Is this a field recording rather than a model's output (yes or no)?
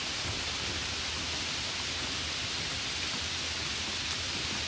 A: yes